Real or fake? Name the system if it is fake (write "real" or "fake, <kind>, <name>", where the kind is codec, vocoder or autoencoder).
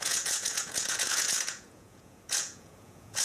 fake, vocoder, Vocos